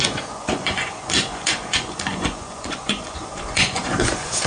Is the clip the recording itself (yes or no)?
no